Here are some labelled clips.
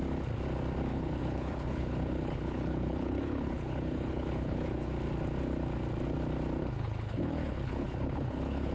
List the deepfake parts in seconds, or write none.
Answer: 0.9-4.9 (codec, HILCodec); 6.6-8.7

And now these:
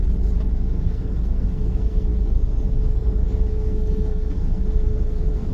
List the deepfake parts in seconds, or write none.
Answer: 0.5-5.5 (codec, SNAC)

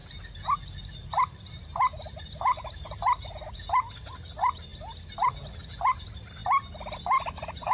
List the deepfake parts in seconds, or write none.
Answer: none

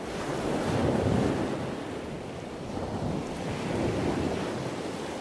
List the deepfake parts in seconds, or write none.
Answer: none

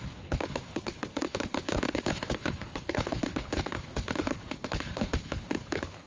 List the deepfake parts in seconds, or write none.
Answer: 0.0-6.1 (codec, HILCodec)